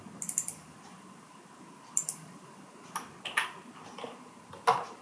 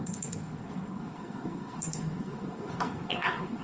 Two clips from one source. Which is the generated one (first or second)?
second